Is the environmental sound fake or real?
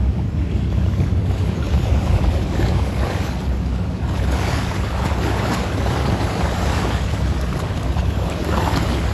fake